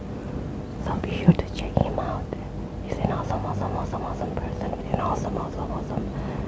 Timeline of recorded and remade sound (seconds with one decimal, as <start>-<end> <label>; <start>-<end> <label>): 0.0-0.7 recorded; 0.7-1.3 remade; 1.3-6.5 recorded